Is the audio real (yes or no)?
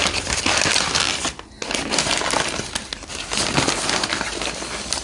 yes